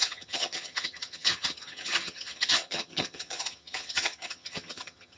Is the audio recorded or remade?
remade